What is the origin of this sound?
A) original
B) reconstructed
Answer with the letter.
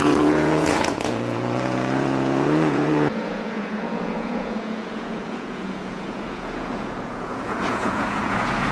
B